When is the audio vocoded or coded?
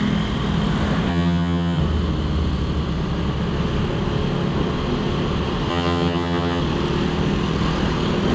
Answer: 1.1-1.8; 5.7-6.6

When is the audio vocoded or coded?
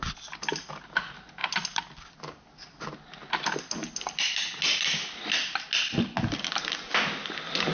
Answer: none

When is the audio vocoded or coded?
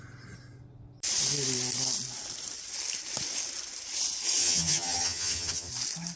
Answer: 4.4-5.7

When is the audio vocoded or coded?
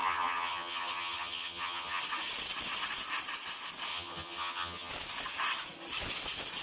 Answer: 0.0-2.0; 3.9-4.9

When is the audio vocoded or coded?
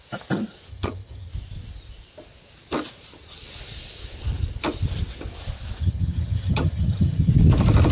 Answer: 0.7-1.3; 5.8-7.3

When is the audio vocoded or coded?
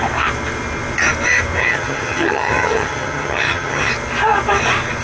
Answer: 1.6-3.9